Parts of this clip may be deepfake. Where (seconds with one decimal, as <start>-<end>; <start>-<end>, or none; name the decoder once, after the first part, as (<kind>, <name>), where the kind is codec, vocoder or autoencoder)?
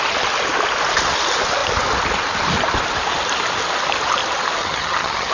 4.6-5.3 (vocoder, HiFi-GAN)